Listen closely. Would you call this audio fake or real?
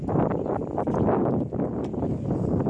real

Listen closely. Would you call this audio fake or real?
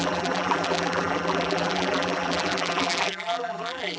fake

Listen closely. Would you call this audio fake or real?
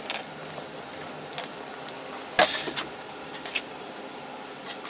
real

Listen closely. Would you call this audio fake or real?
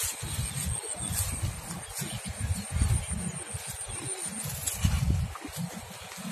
real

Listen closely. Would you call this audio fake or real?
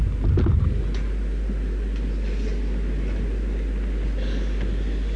real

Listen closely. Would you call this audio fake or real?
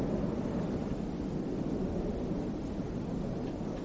real